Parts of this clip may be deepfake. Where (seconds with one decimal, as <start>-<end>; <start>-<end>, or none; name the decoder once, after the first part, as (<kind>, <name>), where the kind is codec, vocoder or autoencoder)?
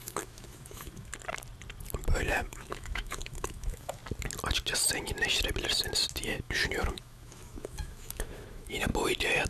0.0-1.1 (autoencoder, DAC-VAE); 2.2-4.0; 6.4-8.9